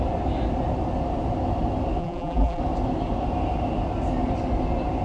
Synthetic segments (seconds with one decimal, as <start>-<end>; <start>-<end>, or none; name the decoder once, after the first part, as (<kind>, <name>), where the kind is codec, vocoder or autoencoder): 2.0-2.6 (vocoder, BigVGAN v2)